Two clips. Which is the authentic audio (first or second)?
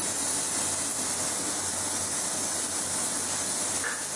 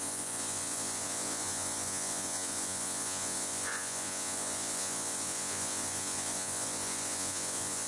first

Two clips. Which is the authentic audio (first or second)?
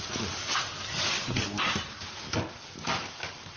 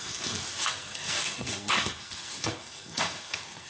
first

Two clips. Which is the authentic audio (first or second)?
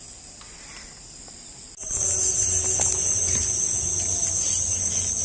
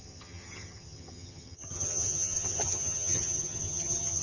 first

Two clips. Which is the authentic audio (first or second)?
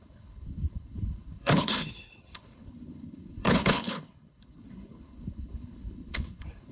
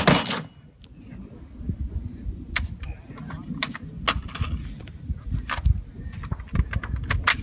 second